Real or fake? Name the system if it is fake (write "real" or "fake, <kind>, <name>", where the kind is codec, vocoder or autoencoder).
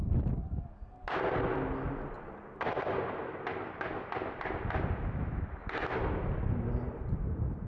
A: real